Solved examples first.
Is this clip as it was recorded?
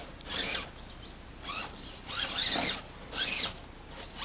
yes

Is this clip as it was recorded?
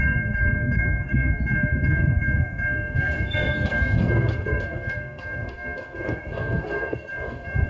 no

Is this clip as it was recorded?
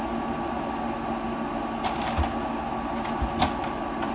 yes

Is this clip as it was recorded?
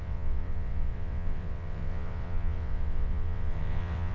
no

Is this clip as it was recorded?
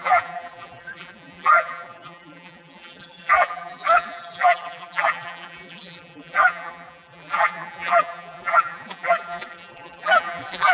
no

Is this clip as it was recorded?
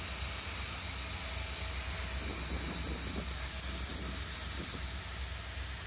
yes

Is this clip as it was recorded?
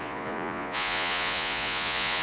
no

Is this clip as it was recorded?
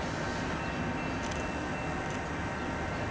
yes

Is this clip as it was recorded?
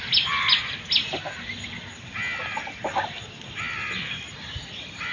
yes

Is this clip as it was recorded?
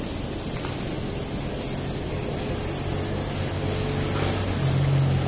yes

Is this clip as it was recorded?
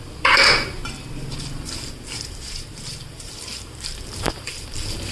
no